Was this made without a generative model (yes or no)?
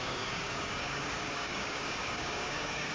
no